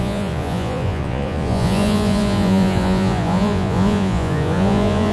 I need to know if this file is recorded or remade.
remade